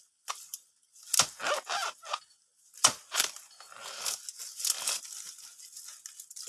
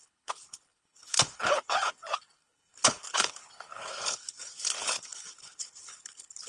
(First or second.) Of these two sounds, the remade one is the second